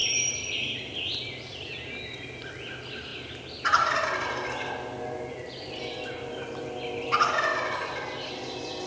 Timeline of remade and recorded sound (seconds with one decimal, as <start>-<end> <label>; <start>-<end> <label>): 0.0-8.9 recorded